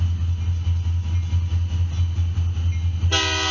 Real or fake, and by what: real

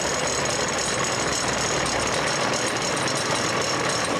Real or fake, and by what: real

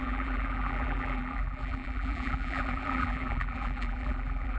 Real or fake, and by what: fake, vocoder, BigVGAN v2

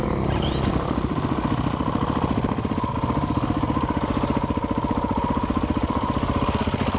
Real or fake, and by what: real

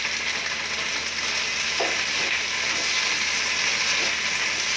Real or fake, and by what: real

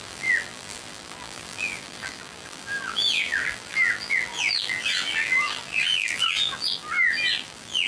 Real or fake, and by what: fake, vocoder, BigVGAN v2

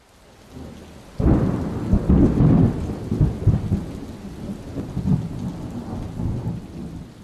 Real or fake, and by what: real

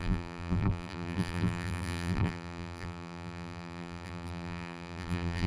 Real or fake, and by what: fake, vocoder, BigVGAN v2